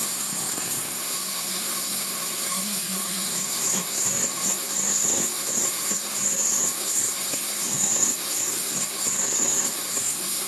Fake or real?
fake